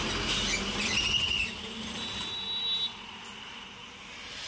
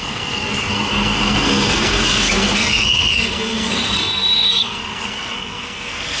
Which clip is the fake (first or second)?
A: second